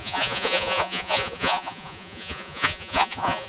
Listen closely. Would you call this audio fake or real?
fake